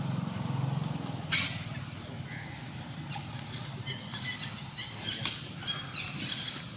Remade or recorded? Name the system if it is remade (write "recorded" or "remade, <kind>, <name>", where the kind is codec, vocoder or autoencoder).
recorded